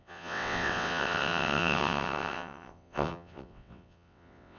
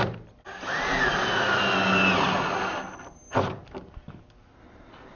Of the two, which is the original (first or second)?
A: second